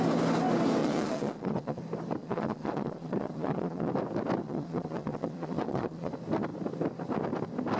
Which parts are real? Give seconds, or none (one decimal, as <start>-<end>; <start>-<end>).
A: 0.0-0.8; 1.8-2.2; 3.9-4.4; 6.1-7.8